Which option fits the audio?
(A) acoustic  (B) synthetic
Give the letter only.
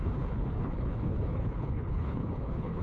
B